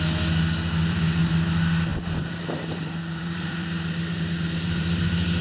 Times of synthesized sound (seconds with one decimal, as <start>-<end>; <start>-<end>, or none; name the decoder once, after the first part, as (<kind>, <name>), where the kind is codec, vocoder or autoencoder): 0.8-1.3 (vocoder, BigVGAN v2); 1.9-5.4